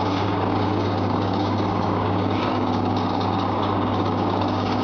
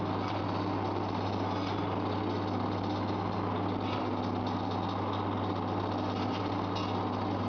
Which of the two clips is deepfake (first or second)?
first